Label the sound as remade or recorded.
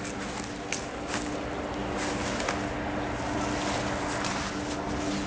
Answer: recorded